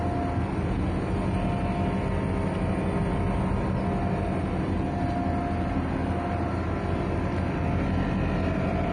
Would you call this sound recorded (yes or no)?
yes